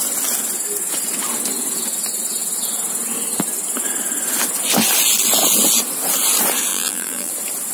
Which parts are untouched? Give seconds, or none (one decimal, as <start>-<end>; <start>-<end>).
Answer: 0.0-6.7; 7.3-7.7